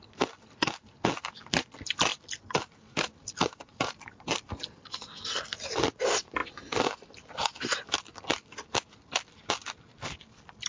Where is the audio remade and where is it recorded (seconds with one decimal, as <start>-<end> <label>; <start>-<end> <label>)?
0.0-10.7 remade